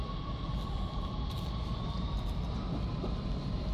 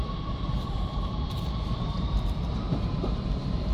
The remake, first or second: second